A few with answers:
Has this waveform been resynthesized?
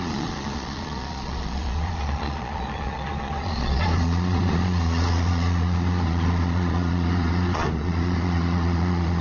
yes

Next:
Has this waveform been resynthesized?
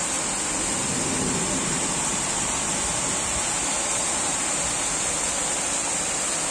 no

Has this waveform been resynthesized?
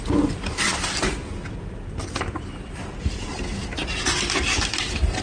no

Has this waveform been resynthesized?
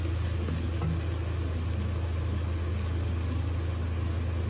no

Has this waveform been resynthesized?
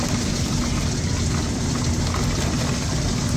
no